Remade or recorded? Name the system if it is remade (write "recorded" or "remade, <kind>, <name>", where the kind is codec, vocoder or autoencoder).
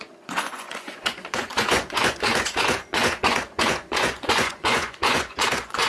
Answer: remade, vocoder, Vocos